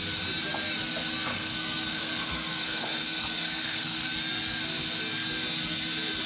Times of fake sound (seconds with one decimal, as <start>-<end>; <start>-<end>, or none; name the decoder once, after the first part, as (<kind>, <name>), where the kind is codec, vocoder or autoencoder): 1.3-4.1 (codec, SNAC)